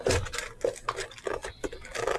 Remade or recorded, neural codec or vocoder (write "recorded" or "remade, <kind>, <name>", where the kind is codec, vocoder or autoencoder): recorded